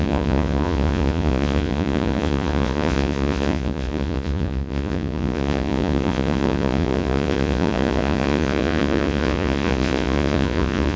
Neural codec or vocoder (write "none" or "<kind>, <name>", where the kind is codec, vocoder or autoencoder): vocoder, Vocos